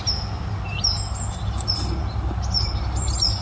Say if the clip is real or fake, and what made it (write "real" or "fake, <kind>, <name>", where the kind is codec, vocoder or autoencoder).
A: real